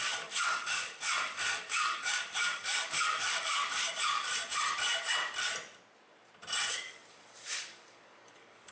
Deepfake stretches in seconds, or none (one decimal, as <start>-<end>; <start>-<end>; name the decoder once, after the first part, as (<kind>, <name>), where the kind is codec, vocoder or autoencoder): 0.0-4.3 (codec, DAC); 6.7-8.7